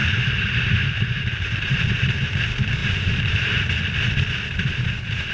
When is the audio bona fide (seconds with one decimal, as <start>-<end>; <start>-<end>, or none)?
2.4-2.8; 3.7-5.3